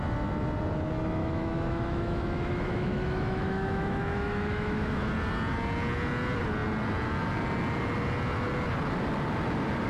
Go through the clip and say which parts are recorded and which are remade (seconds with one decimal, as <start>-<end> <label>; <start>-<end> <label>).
0.0-1.2 recorded; 1.2-5.1 remade; 5.1-9.9 recorded